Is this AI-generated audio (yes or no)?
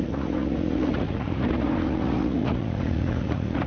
yes